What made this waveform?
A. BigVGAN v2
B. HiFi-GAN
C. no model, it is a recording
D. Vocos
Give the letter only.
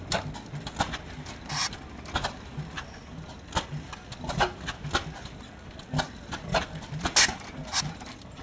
C